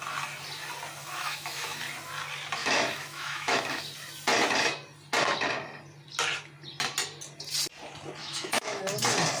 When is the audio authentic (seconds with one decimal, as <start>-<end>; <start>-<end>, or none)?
0.0-1.0; 1.8-2.6; 3.8-8.2; 8.8-9.4